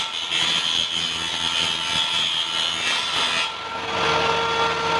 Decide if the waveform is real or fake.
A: real